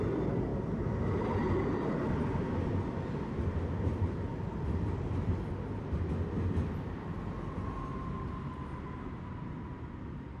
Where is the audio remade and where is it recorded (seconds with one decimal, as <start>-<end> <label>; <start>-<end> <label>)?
0.0-10.4 recorded